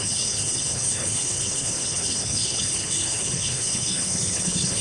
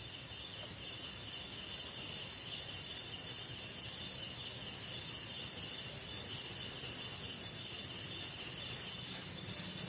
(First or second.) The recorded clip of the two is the second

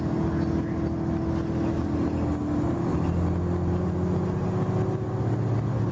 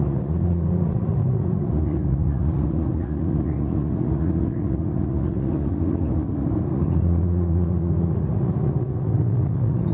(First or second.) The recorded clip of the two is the first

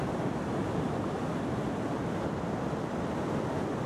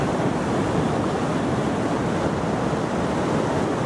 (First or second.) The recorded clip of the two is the first